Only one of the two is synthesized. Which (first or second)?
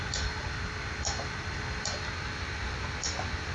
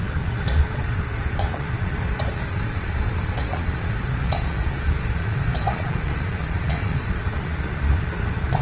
second